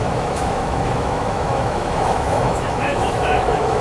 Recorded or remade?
remade